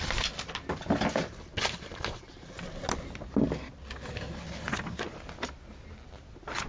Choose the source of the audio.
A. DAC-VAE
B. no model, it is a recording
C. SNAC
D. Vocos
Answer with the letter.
B